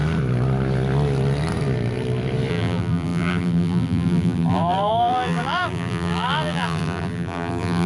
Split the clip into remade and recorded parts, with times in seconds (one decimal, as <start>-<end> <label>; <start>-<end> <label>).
0.0-2.5 recorded; 2.5-7.9 remade